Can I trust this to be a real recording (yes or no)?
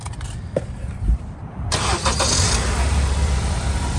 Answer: no